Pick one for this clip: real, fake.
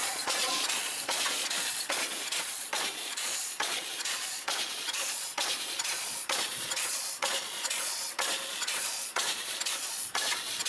fake